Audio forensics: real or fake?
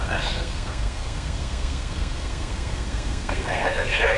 fake